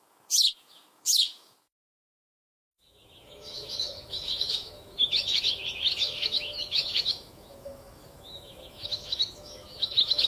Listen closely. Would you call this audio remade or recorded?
remade